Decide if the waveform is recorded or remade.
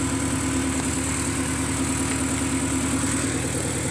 recorded